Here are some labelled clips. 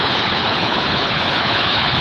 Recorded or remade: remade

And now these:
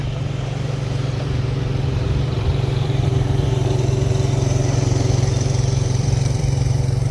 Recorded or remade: remade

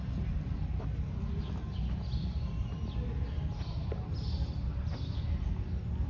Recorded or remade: recorded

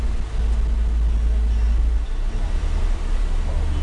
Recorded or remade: recorded